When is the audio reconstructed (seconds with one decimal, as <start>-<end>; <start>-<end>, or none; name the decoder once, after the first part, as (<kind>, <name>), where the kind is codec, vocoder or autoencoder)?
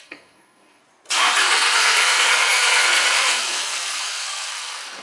0.0-0.8 (codec, SNAC); 1.4-5.0